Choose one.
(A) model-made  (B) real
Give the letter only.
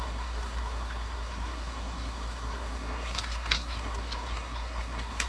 A